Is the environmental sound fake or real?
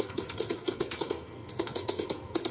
fake